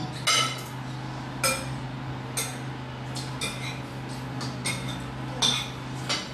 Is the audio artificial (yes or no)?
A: no